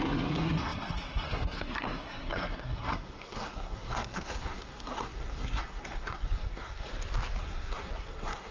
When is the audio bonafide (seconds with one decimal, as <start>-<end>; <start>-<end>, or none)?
6.9-7.4